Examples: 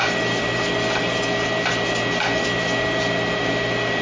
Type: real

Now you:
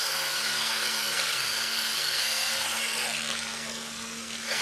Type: fake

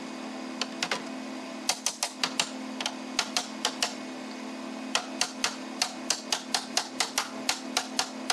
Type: real